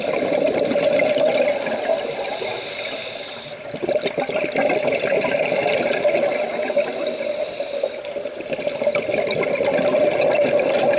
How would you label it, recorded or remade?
recorded